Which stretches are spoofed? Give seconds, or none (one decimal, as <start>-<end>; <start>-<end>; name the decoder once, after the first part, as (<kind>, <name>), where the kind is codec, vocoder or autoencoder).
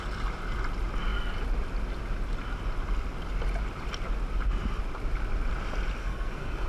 6.0-6.7 (codec, SNAC)